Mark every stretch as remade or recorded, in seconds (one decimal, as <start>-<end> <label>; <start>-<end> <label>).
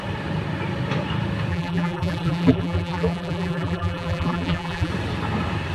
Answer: 0.0-1.5 recorded; 1.5-4.9 remade; 4.9-5.7 recorded